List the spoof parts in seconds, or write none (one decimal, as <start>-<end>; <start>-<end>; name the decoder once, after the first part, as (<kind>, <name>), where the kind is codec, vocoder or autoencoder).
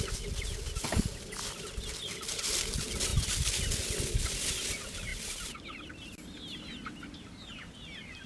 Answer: none